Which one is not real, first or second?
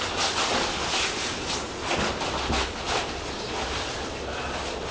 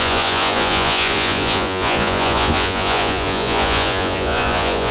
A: second